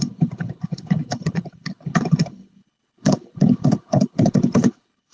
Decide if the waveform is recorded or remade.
remade